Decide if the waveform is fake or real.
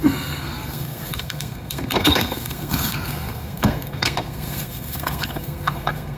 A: fake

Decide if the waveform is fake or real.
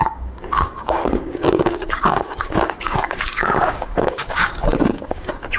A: fake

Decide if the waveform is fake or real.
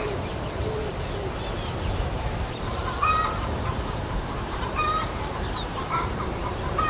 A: fake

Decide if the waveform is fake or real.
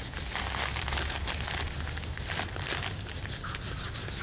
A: real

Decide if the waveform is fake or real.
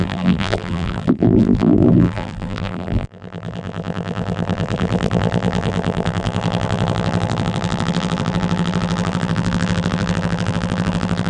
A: fake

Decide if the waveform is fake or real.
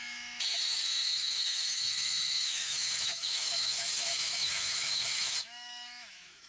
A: fake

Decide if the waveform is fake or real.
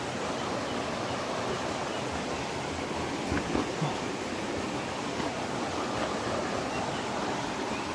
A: real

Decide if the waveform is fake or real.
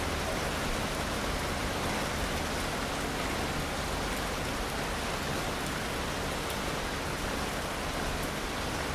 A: real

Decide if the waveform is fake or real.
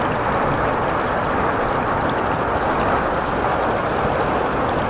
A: real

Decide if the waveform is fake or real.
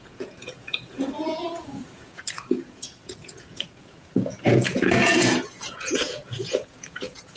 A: fake